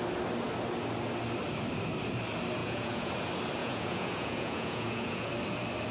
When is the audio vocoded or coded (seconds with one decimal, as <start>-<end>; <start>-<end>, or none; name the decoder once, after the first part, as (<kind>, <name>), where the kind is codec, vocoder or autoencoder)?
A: 2.6-3.1 (vocoder, Vocos); 3.6-5.3

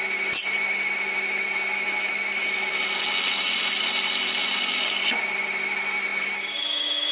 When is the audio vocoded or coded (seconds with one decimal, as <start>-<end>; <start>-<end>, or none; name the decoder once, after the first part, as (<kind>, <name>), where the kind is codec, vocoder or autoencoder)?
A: none

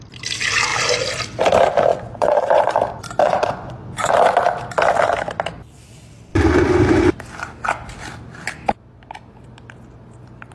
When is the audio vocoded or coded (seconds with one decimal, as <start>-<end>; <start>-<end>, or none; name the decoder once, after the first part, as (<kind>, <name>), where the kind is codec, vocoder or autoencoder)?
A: 1.9-2.6 (vocoder, Vocos); 3.2-4.1

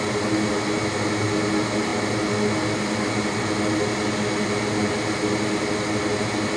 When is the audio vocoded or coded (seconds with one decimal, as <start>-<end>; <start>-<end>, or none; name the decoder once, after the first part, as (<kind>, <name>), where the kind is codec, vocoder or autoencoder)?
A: none

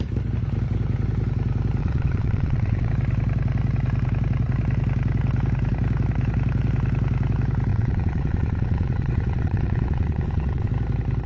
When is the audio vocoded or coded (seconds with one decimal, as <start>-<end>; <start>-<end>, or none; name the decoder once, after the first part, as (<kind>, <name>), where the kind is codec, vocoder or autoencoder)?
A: 1.8-2.9 (vocoder, Vocos); 7.7-10.7

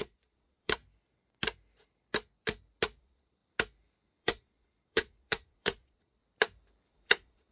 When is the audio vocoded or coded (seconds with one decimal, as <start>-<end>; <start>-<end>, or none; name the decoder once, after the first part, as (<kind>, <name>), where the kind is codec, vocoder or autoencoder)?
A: 0.0-0.8 (vocoder, Vocos); 3.0-3.4; 4.2-6.2; 6.9-7.5

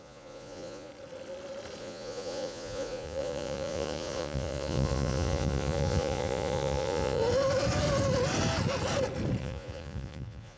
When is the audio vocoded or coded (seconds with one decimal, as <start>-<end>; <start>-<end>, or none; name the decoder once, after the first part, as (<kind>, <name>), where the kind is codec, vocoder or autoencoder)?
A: 0.0-0.9 (vocoder, Vocos); 1.8-7.2; 9.4-10.6